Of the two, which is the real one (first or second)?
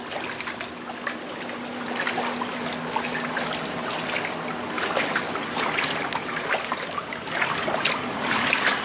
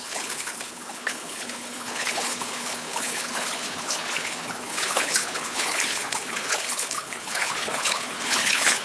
first